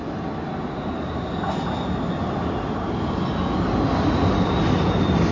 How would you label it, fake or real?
real